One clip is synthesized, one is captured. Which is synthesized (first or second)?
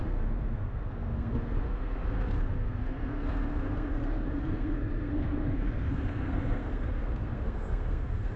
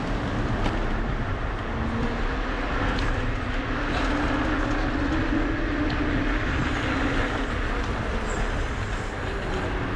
first